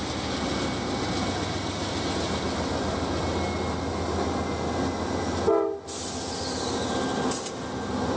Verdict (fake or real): real